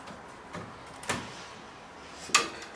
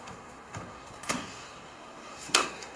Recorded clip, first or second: first